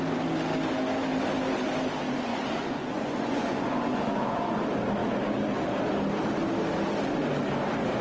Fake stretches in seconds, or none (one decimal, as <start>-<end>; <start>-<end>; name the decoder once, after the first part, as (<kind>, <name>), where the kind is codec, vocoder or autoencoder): 2.3-4.6 (vocoder, Vocos)